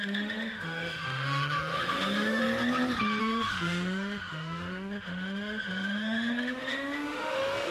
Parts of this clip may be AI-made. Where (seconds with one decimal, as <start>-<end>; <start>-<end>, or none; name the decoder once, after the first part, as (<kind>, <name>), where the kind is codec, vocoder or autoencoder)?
0.0-2.4 (autoencoder, DAC-VAE); 3.2-7.7